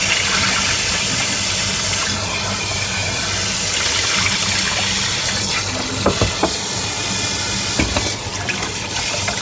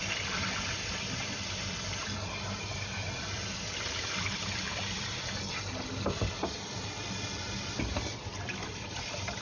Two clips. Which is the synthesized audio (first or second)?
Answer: second